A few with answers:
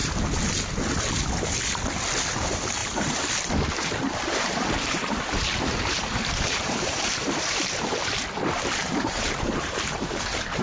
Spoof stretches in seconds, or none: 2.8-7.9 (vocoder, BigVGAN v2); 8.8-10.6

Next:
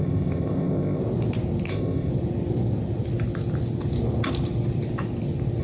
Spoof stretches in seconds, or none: 0.0-1.0 (codec, ZipCodec); 1.7-2.1

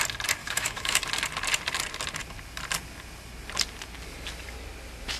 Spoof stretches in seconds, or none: 0.4-1.0 (autoencoder, DAC-VAE)

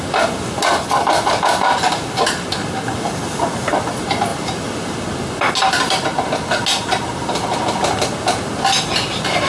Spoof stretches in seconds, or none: none

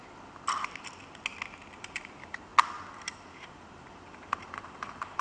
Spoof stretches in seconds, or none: 1.8-2.5 (vocoder, BigVGAN v2); 3.2-5.2

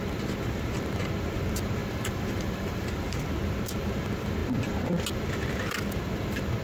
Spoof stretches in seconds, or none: 1.8-2.9 (vocoder, BigVGAN v2)